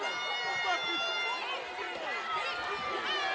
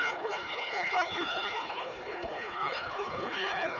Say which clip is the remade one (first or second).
second